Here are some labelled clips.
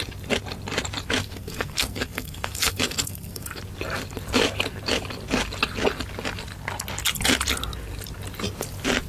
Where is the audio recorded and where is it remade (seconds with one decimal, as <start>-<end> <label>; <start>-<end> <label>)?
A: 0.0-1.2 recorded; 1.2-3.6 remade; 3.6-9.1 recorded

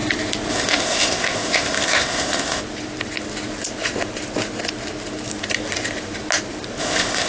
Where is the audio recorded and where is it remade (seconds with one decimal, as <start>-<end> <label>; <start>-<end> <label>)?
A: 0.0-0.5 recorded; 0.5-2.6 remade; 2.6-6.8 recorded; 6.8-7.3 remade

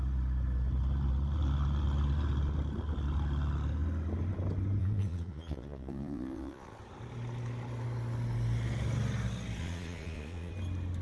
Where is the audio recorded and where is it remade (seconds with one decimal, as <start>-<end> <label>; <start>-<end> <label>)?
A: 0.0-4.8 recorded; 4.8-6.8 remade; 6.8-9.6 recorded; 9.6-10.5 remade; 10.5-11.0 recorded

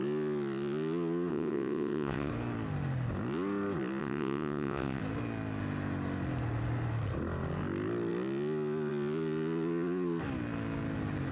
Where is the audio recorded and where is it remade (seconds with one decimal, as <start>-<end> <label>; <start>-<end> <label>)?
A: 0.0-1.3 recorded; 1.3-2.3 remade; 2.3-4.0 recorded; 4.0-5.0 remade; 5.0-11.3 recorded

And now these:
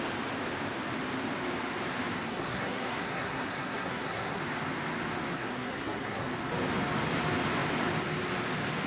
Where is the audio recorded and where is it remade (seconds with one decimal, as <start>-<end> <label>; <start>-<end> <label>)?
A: 0.0-2.3 recorded; 2.3-4.4 remade; 4.4-5.3 recorded; 5.3-6.3 remade; 6.3-8.9 recorded